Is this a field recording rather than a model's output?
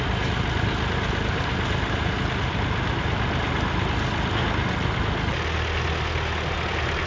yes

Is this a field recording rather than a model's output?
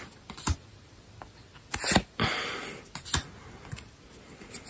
yes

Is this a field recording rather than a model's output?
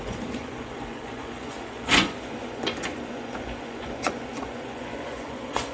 no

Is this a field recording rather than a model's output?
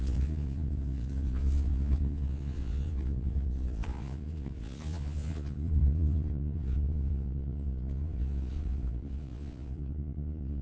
no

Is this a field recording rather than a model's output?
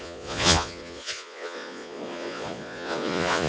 no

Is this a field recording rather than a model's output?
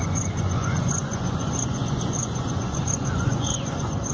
no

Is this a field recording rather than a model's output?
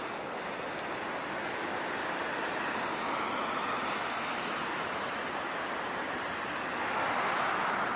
yes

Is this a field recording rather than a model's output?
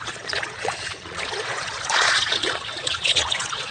no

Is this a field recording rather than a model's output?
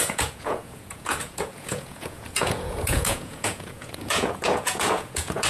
no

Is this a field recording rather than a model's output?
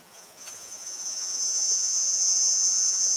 no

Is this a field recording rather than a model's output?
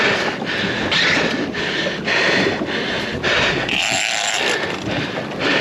yes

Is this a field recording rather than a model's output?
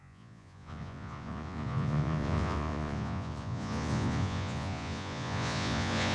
no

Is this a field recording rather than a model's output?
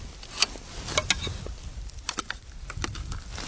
yes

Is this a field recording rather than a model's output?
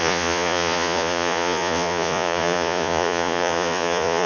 no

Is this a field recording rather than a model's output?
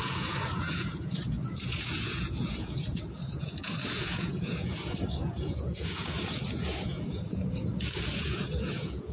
no